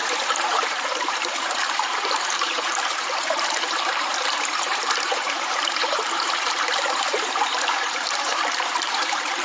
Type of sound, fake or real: fake